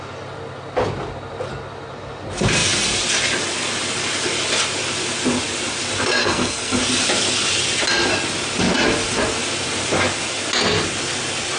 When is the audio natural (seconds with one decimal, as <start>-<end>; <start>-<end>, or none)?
0.0-6.2; 6.8-11.6